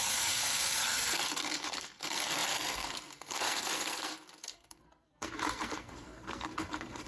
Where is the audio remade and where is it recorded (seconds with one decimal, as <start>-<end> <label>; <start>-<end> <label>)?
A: 0.0-7.1 remade